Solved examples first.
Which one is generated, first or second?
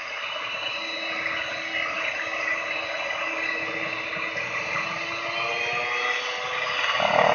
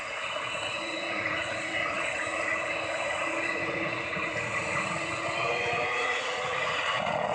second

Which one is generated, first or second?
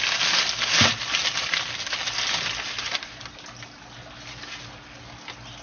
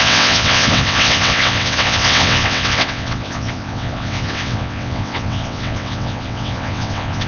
second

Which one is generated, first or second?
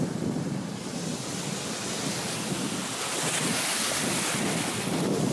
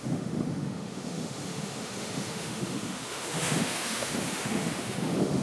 second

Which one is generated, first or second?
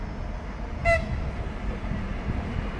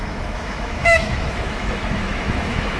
second